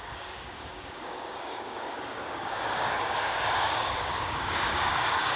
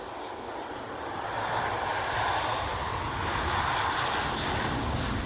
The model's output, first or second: first